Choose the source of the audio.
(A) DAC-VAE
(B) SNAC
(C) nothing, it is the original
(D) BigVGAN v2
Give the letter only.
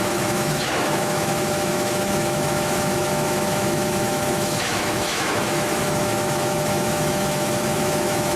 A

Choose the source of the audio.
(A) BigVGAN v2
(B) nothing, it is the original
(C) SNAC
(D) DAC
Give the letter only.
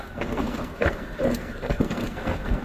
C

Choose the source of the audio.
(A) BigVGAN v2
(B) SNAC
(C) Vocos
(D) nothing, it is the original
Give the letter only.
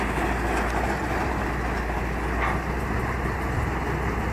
D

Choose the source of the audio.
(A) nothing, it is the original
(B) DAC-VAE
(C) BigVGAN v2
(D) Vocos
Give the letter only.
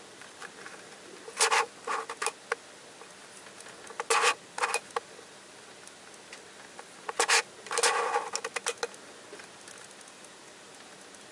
A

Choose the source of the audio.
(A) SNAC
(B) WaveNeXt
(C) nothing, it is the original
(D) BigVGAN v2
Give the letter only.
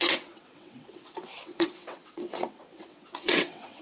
B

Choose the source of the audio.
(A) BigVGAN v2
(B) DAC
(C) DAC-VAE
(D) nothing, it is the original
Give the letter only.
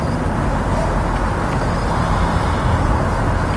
D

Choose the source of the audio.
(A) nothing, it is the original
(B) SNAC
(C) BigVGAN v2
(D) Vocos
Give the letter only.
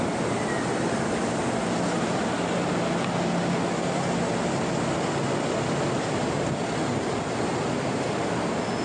A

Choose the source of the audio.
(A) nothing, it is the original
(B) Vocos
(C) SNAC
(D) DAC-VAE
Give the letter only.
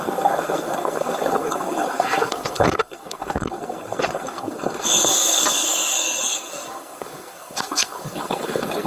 C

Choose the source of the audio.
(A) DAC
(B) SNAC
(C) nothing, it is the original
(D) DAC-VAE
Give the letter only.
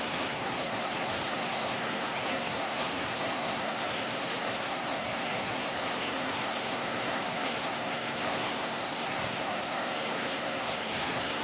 B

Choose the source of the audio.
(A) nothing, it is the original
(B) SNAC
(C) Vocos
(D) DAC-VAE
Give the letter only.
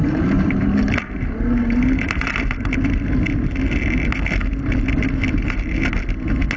A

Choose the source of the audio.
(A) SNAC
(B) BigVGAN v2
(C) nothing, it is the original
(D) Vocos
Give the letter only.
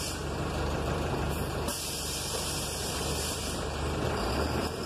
B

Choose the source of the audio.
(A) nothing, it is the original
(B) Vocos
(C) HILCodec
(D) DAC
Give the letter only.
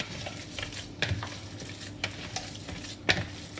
A